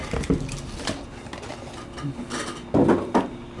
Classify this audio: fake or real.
real